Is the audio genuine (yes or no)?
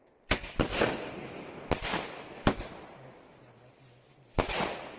yes